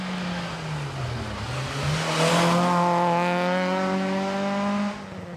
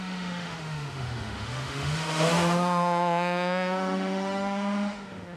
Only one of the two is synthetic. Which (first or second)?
second